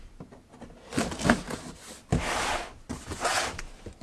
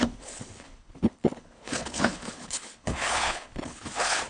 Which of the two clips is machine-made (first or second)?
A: second